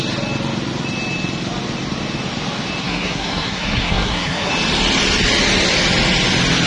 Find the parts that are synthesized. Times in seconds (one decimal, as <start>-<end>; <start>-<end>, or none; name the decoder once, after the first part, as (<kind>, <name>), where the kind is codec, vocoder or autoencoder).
2.8-4.5 (codec, SNAC)